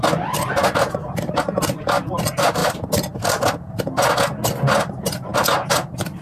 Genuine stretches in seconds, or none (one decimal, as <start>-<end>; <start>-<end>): 0.0-6.2